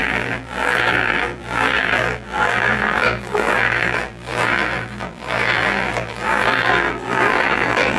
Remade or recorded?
remade